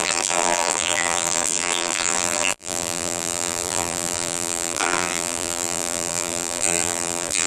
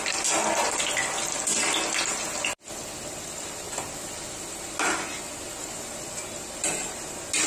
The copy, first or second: first